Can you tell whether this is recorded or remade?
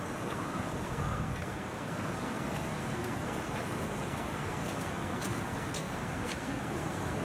remade